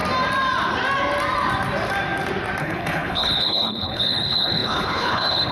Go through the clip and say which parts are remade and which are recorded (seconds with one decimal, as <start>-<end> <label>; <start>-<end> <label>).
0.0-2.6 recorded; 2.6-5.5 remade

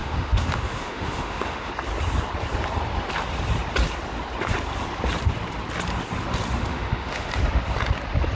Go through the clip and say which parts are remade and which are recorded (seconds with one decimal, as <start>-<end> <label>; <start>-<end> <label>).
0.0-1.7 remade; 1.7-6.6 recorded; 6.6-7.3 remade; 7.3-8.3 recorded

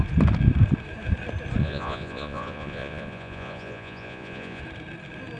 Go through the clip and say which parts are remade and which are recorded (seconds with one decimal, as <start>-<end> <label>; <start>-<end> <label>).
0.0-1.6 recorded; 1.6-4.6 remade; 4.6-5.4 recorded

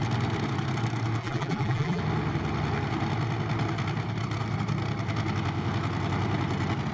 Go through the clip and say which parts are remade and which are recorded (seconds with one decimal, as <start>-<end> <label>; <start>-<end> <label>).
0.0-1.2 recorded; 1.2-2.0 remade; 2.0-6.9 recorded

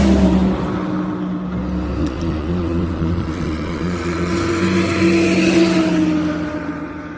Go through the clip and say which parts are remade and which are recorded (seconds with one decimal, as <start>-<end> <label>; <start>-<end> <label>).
0.0-2.0 recorded; 2.0-4.3 remade; 4.3-7.2 recorded

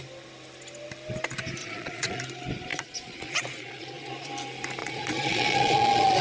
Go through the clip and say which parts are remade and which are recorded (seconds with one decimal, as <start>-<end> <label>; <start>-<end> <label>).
0.0-1.6 recorded; 1.6-2.2 remade; 2.2-2.7 recorded; 2.7-4.3 remade; 4.3-4.8 recorded; 4.8-6.2 remade

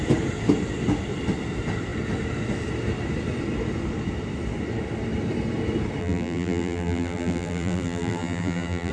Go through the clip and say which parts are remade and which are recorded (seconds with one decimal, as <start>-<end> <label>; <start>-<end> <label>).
0.0-6.0 recorded; 6.0-8.9 remade

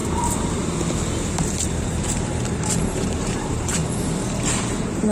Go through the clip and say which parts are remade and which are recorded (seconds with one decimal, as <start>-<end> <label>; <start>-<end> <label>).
0.0-1.6 recorded; 1.6-3.8 remade; 3.8-4.6 recorded; 4.6-5.1 remade